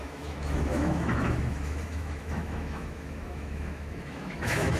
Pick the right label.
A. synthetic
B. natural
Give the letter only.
A